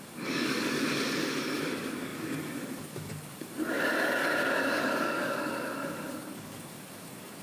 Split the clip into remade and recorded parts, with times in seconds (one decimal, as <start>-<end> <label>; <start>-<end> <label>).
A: 0.0-7.4 remade